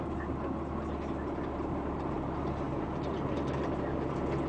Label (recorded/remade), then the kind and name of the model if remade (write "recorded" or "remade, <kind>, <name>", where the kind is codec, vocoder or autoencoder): recorded